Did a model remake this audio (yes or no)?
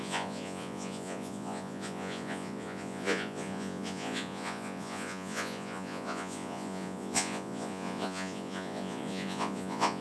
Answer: yes